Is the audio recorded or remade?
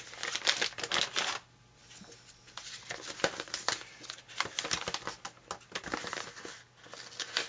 recorded